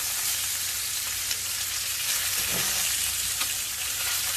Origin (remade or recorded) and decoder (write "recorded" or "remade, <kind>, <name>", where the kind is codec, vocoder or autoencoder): recorded